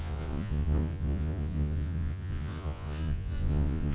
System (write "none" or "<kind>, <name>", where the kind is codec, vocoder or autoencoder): vocoder, Vocos